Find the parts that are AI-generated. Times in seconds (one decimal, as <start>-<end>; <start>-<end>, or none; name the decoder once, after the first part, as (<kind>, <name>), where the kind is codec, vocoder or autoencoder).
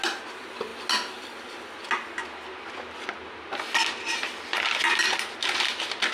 none